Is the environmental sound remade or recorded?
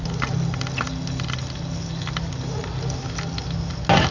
recorded